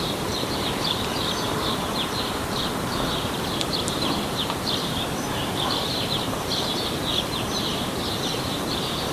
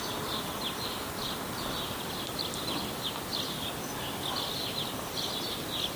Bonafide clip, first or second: second